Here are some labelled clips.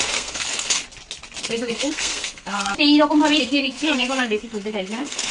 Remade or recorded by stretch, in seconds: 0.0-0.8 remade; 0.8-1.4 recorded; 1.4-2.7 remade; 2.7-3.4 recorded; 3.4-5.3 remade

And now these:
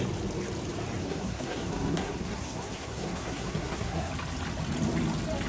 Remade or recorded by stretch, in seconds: 0.0-1.0 recorded; 1.0-4.1 remade; 4.1-5.5 recorded

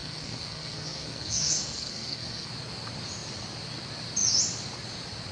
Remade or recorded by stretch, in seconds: 0.0-2.5 remade; 2.5-5.3 recorded

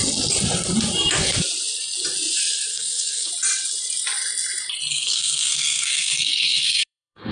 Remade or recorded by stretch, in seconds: 0.0-2.7 recorded; 2.7-3.3 remade; 3.3-4.9 recorded; 4.9-7.3 remade

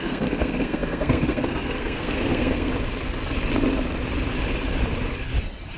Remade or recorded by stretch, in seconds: 0.0-2.7 remade; 2.7-5.8 recorded

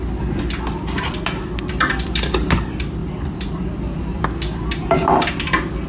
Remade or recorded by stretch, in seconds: 0.0-5.9 recorded

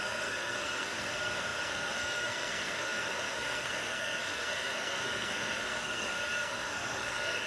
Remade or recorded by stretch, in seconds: 0.0-7.5 remade

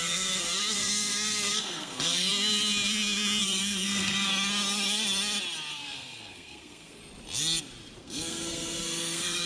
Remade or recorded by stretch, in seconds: 0.0-4.3 remade; 4.3-5.7 recorded; 5.7-7.0 remade; 7.0-8.0 recorded; 8.0-9.5 remade